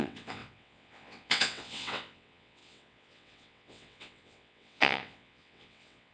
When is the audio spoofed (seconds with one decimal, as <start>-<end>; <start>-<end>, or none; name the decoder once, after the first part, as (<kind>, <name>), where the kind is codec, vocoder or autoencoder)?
0.0-6.1 (vocoder, WaveNeXt)